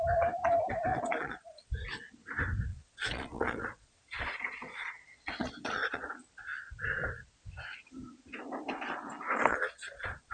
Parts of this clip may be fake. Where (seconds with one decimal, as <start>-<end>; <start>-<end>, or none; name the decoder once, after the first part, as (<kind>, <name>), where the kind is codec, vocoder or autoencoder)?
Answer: 0.9-1.7 (vocoder, Vocos); 2.7-6.1; 9.5-10.3